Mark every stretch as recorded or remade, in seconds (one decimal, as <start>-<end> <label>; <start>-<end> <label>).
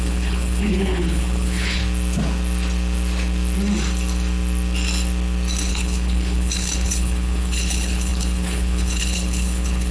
0.0-1.8 remade; 1.8-5.7 recorded; 5.7-9.9 remade